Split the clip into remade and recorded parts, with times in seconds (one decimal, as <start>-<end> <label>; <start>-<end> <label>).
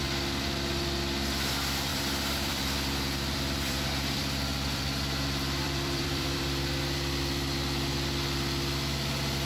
0.0-1.9 recorded; 1.9-6.8 remade; 6.8-9.5 recorded